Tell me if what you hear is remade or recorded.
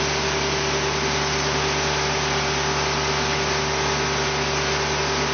recorded